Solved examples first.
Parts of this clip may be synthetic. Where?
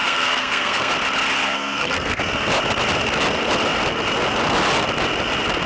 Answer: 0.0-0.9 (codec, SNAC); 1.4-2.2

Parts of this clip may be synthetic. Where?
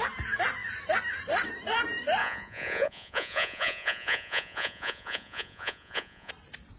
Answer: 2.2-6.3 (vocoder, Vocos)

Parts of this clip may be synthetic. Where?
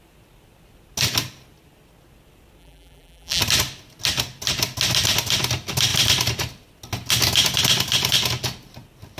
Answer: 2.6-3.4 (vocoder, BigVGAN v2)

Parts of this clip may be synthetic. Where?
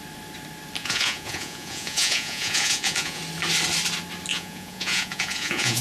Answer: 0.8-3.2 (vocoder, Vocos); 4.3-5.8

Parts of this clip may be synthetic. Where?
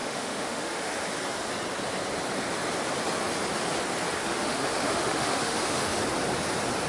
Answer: 0.0-0.9 (autoencoder, DAC-VAE); 4.2-6.0